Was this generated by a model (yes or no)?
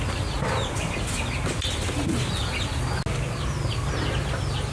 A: no